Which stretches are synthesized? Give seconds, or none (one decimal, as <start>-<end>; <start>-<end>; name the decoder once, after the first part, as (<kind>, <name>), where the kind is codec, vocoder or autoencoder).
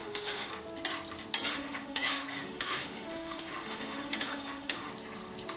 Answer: 0.0-0.5 (autoencoder, DAC-VAE); 1.5-4.9